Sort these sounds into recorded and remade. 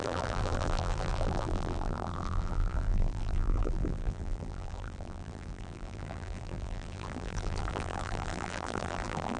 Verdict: remade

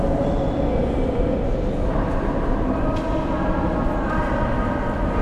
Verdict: recorded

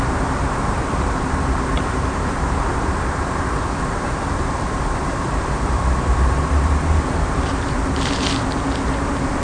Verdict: remade